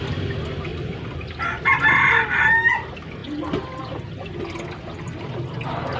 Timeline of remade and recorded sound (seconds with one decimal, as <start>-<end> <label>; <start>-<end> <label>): 0.0-6.0 recorded